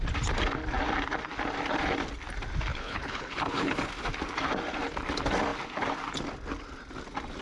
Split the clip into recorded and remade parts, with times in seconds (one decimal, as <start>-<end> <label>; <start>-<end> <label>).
0.0-2.7 recorded; 2.7-3.9 remade; 3.9-7.4 recorded